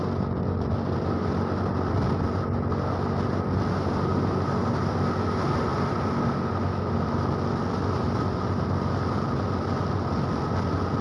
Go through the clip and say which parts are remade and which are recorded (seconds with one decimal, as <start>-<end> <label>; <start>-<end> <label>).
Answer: 0.0-11.0 recorded